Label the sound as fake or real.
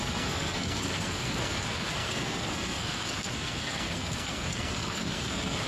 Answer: fake